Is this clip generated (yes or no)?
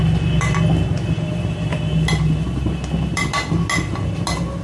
no